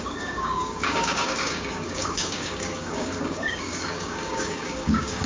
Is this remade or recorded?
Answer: remade